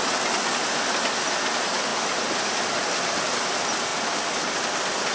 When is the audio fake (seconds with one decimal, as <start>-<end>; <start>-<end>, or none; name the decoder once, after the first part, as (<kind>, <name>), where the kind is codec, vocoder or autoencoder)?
none